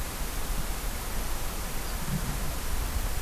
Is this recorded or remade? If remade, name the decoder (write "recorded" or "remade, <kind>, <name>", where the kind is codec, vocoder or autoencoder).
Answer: recorded